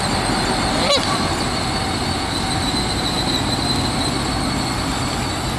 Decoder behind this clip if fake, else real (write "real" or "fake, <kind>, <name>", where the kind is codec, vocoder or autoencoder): real